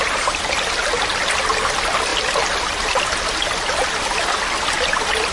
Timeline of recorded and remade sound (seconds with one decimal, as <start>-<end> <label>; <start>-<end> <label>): 0.0-5.3 recorded